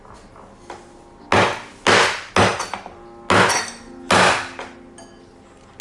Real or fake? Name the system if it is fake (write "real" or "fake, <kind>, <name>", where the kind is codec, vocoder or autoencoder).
real